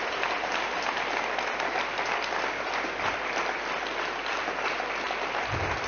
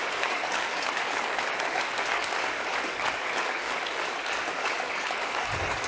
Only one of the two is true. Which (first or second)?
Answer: first